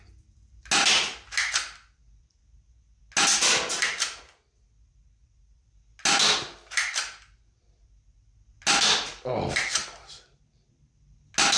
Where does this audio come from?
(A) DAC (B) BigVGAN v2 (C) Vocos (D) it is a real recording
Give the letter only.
D